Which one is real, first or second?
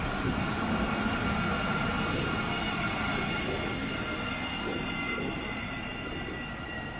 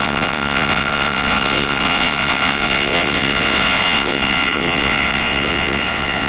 first